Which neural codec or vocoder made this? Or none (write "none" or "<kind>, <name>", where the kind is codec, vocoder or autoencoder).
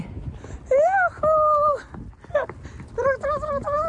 none